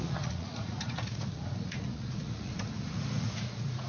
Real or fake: fake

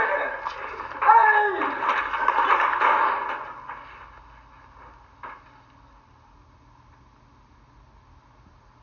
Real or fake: real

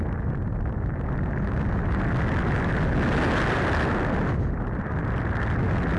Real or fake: real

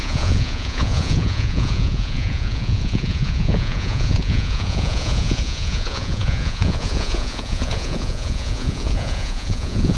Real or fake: fake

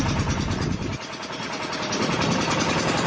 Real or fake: real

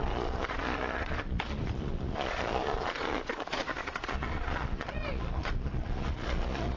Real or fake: fake